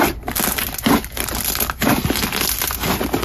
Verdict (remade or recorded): recorded